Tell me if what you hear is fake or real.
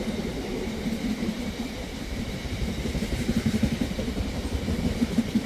fake